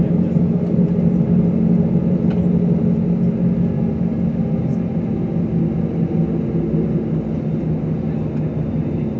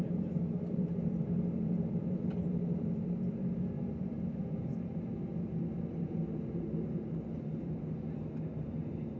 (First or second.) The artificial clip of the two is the second